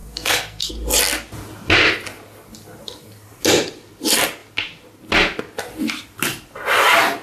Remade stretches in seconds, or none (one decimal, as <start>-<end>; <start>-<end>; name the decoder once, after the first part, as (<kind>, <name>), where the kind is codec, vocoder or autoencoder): 0.0-0.7 (codec, SNAC)